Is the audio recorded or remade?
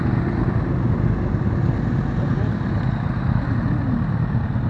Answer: recorded